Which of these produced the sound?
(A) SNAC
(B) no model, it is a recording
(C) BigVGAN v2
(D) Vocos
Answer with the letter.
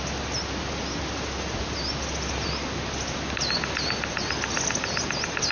B